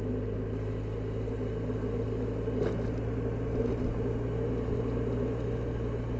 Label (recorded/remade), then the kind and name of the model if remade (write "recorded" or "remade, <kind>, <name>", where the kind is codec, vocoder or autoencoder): recorded